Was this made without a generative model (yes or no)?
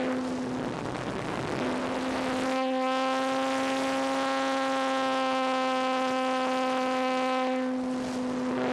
yes